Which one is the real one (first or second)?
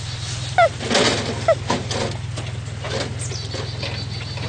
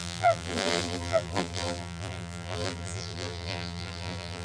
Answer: first